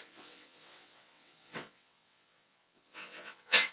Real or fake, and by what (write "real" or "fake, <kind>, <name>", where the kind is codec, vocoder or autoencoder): fake, vocoder, WaveNeXt